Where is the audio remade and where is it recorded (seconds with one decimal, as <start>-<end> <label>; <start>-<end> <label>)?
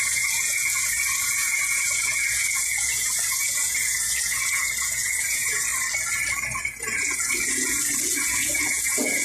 0.0-5.7 remade; 5.7-6.6 recorded; 6.6-9.2 remade